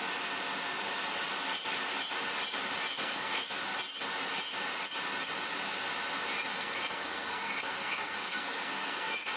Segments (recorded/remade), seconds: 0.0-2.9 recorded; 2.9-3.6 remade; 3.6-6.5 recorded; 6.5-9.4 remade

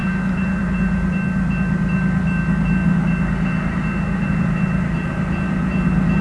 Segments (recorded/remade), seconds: 0.0-6.2 recorded